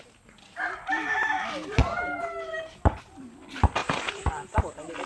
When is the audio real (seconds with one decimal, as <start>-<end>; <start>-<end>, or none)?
0.0-1.8; 3.0-3.8; 4.6-5.1